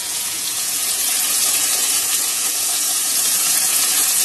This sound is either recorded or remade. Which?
remade